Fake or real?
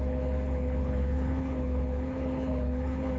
fake